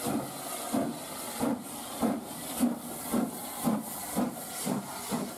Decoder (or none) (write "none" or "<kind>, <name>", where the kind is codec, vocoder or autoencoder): none